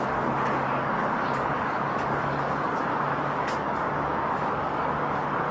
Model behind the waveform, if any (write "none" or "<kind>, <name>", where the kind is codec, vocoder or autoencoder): codec, DAC